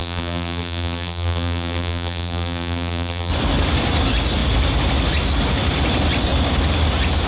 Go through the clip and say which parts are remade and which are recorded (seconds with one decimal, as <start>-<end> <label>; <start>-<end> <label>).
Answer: 0.0-3.3 remade; 3.3-7.3 recorded